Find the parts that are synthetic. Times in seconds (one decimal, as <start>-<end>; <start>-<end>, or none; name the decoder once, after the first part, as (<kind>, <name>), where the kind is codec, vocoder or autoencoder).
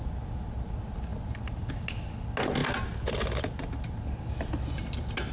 none